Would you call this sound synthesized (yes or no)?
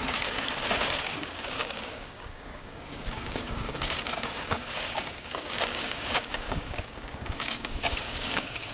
yes